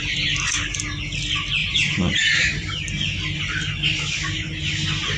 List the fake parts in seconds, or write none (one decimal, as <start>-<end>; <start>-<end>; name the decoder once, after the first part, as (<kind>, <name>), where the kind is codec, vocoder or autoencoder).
none